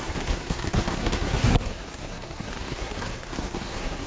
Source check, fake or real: fake